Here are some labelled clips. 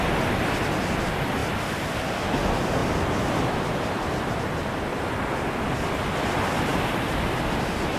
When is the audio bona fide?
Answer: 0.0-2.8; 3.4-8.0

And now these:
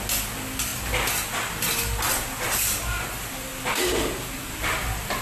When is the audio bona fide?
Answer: 0.0-5.2

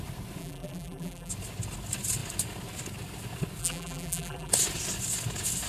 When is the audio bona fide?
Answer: 0.0-0.4; 1.3-3.6; 4.5-5.7

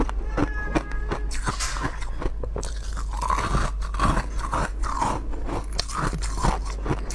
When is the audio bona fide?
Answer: 0.0-7.1

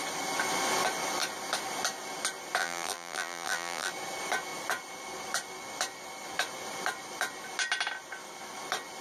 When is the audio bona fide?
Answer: 0.0-2.6; 3.9-9.0

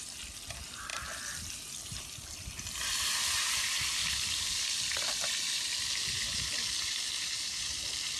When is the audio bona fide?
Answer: 4.0-6.1